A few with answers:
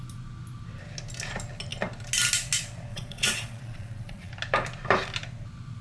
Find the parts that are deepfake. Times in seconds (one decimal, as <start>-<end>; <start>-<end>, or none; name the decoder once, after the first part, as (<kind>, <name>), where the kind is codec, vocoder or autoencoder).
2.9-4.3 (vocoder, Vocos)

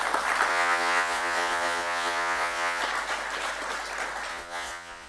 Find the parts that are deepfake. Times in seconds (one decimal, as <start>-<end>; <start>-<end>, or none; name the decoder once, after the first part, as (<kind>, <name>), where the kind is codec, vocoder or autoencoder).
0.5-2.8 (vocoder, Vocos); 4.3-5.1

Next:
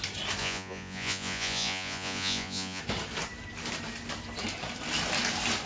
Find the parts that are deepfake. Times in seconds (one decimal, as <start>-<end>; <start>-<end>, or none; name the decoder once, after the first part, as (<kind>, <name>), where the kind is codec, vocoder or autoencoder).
0.4-2.8 (vocoder, Vocos)